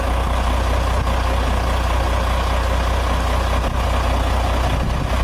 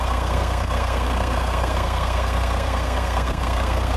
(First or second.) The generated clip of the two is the second